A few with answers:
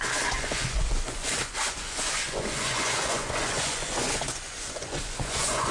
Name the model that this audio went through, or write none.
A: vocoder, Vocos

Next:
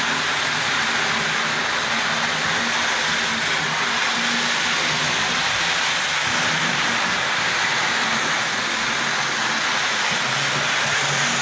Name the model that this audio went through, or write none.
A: none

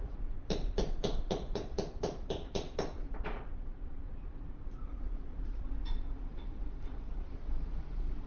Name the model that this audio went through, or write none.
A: vocoder, Vocos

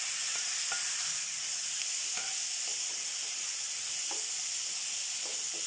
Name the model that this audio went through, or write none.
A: none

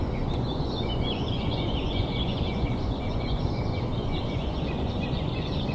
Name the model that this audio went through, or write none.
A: vocoder, Vocos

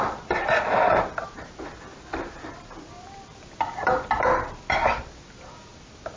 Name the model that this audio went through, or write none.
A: none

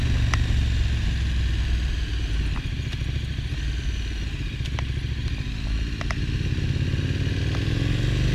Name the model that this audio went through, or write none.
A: none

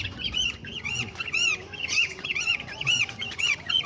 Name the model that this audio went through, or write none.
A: vocoder, Vocos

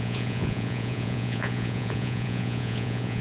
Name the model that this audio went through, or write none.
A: vocoder, Vocos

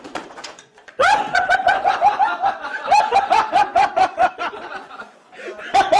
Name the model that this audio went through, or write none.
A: vocoder, Vocos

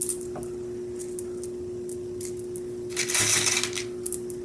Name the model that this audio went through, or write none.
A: none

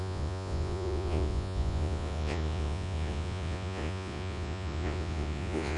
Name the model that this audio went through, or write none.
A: vocoder, Vocos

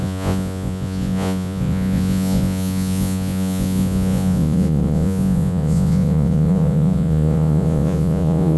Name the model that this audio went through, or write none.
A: vocoder, Vocos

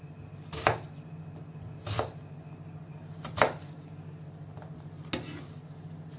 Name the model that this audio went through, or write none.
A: none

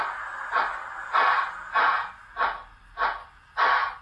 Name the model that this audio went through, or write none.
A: none